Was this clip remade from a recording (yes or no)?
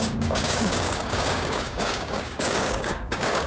yes